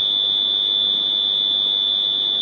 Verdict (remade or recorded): recorded